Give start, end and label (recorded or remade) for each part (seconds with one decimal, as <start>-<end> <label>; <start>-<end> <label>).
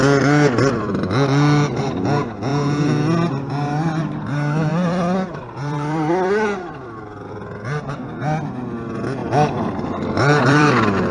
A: 0.0-0.6 recorded; 0.6-1.8 remade; 1.8-4.7 recorded; 4.7-7.3 remade; 7.3-9.2 recorded; 9.2-10.7 remade; 10.7-11.1 recorded